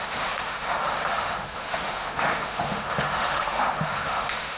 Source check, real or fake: fake